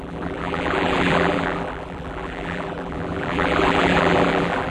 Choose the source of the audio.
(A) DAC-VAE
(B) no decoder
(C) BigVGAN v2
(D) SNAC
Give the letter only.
C